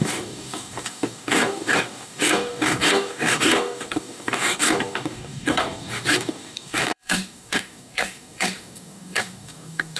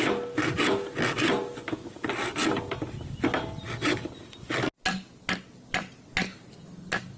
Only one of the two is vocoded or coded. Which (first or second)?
first